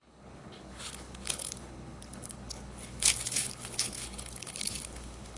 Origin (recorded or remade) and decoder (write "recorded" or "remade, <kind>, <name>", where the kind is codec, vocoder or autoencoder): remade, codec, HILCodec